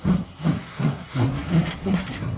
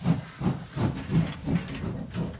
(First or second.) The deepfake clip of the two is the first